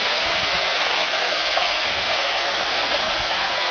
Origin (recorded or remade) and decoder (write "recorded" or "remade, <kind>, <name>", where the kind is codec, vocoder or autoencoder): remade, codec, SNAC